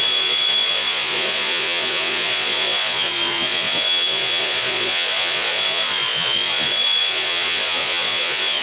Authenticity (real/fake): fake